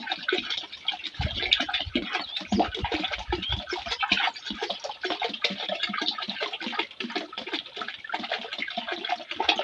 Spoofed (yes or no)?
no